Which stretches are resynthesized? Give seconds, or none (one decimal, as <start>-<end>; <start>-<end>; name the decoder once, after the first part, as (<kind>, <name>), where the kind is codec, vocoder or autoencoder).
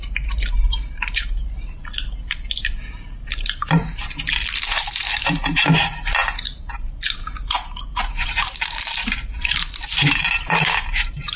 0.0-1.8 (vocoder, BigVGAN v2); 2.9-3.8; 4.6-11.4